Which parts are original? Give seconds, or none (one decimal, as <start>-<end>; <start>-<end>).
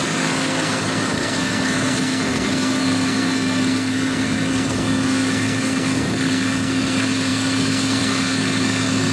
none